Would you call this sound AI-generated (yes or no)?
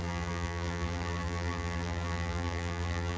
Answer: yes